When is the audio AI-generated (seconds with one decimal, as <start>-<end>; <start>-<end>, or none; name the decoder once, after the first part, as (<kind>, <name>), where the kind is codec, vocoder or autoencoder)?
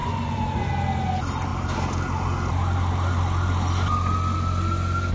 0.0-0.7 (vocoder, Vocos)